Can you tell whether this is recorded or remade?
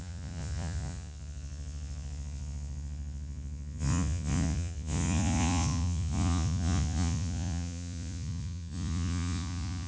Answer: remade